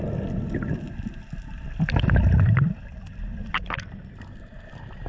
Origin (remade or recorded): recorded